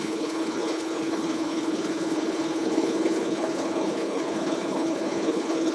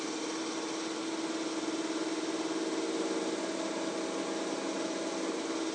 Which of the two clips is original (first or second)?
second